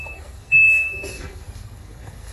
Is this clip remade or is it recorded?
remade